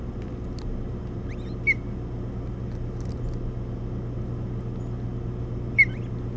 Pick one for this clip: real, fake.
real